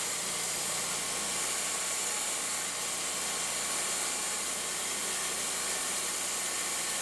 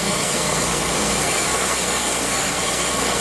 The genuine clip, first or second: first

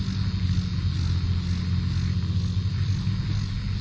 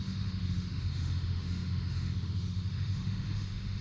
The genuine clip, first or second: first